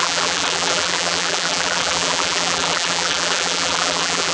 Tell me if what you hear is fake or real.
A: fake